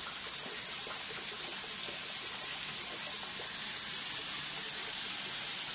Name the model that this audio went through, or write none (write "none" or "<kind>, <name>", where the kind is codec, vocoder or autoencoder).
none